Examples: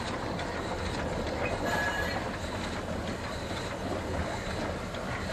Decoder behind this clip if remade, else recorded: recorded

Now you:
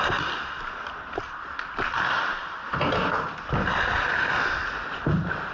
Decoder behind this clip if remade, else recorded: recorded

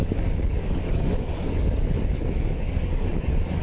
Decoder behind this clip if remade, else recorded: remade, codec, DAC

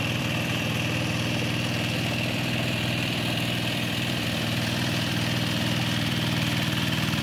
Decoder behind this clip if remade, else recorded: remade, vocoder, BigVGAN v2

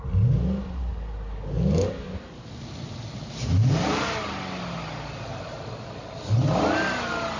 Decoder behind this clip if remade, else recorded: recorded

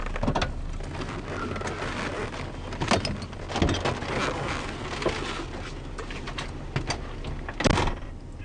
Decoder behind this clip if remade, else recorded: recorded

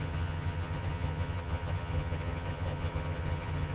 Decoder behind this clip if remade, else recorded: remade, vocoder, HiFi-GAN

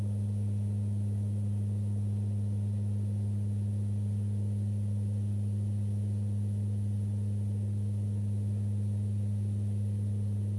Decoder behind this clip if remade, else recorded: recorded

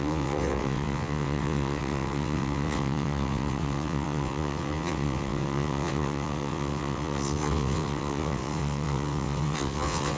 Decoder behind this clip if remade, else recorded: remade, vocoder, WaveNeXt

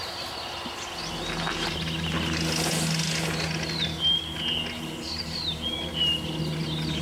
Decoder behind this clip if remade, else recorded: recorded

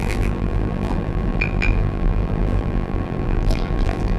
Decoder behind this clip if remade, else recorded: remade, vocoder, BigVGAN v2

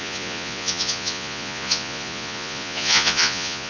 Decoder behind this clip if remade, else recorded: remade, vocoder, Vocos